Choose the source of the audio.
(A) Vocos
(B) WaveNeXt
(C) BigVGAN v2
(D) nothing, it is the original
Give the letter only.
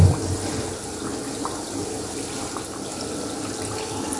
D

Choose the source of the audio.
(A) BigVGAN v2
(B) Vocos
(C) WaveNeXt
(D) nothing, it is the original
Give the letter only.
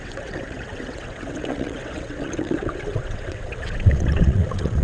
C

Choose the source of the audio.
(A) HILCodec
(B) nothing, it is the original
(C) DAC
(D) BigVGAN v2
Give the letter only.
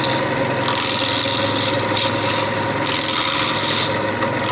B